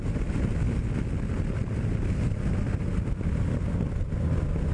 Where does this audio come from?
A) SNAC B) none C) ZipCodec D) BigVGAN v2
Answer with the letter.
B